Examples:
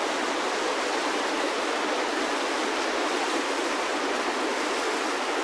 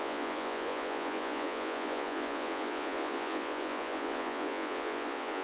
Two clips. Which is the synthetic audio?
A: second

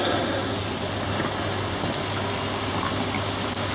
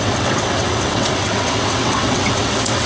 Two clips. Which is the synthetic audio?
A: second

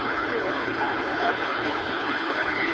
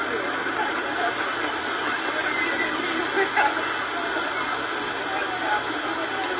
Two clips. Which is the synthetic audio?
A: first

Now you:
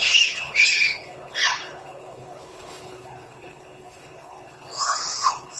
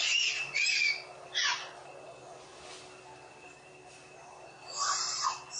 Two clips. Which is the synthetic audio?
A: first